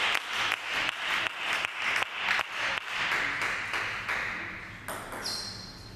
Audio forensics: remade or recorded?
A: recorded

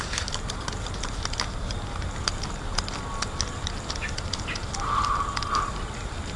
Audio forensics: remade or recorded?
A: recorded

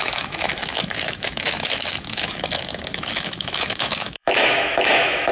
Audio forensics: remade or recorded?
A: remade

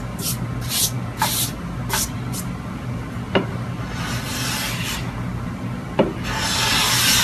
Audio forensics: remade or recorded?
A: recorded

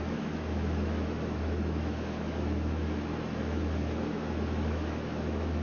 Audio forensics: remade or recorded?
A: remade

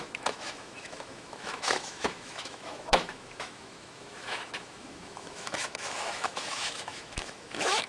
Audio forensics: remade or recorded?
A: remade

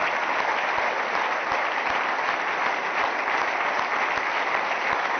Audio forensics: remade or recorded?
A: recorded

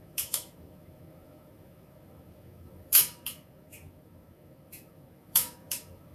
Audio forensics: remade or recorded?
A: remade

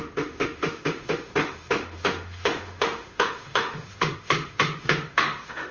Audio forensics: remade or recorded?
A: remade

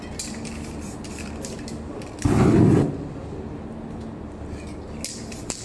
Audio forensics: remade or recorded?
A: recorded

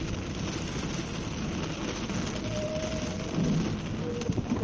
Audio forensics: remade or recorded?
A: recorded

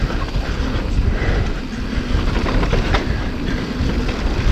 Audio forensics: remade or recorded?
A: recorded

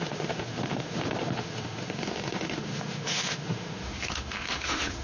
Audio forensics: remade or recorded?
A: remade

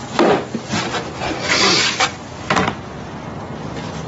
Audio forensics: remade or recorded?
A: recorded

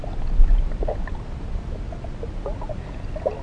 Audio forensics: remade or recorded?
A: recorded